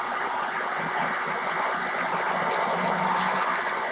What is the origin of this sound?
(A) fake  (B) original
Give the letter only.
A